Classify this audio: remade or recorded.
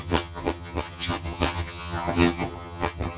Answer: remade